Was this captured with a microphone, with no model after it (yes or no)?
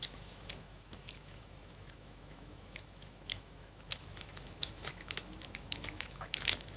no